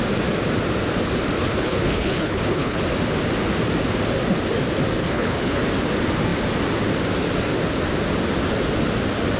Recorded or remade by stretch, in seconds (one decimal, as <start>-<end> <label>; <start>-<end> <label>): 0.0-1.4 recorded; 1.4-2.8 remade; 2.8-5.0 recorded; 5.0-5.6 remade; 5.6-9.4 recorded